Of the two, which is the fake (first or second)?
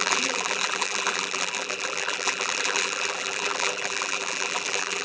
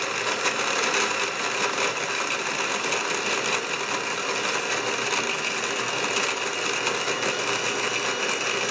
first